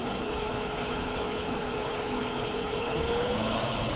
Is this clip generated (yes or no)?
yes